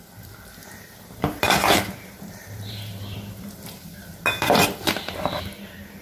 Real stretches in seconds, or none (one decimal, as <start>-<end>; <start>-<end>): 0.0-0.6; 4.2-6.0

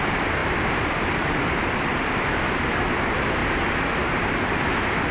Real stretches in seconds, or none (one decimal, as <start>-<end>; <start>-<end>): 0.0-0.4; 1.1-1.9; 2.6-3.4; 4.6-5.1

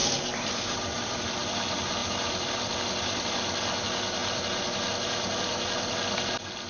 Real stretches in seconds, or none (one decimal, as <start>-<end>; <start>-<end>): 1.3-2.0; 2.8-6.7

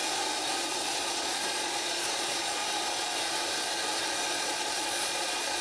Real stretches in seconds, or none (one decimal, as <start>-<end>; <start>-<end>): 0.0-0.9; 2.6-4.3

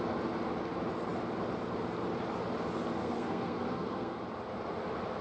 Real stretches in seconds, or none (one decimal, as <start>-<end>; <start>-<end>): 0.0-3.0; 4.2-5.2